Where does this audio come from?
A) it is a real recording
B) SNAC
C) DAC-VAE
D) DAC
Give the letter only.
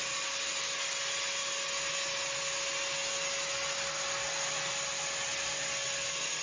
A